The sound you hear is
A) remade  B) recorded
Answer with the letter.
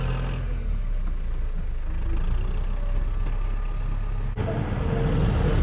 B